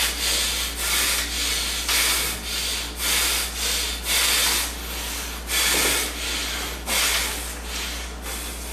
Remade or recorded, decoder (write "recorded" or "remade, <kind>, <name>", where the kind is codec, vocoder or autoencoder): recorded